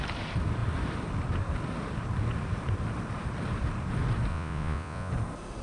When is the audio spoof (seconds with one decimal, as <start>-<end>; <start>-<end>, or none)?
4.3-5.1